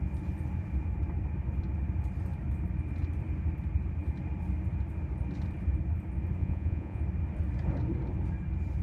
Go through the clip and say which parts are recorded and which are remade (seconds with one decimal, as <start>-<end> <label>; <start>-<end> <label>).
0.0-6.4 recorded; 6.4-7.0 remade; 7.0-8.8 recorded